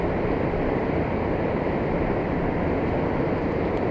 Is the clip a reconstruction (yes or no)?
no